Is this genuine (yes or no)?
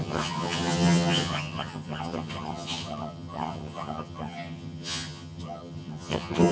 no